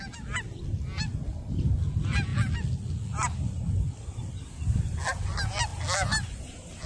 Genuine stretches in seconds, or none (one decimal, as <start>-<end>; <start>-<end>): 0.0-6.9